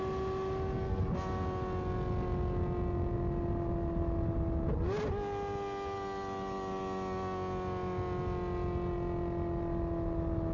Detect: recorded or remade recorded